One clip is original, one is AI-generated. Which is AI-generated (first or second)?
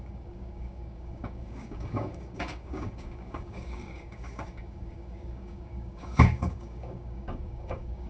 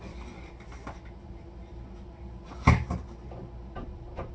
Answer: first